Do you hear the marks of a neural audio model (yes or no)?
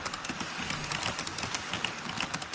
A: no